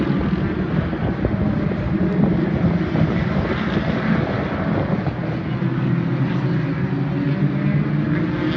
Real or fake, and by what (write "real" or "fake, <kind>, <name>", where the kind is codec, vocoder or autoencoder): real